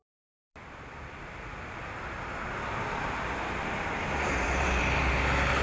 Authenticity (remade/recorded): recorded